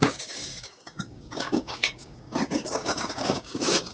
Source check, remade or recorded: remade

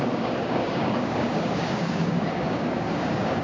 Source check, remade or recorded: remade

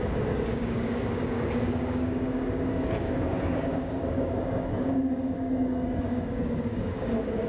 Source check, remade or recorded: remade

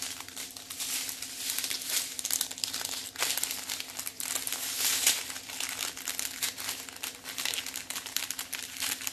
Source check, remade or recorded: recorded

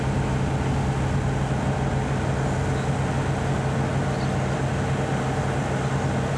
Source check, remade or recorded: recorded